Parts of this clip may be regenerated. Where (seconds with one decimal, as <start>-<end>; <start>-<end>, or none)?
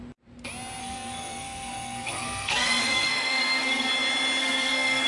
0.8-3.9; 4.4-5.1